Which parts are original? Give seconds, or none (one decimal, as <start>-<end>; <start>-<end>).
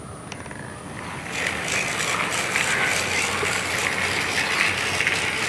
0.0-5.5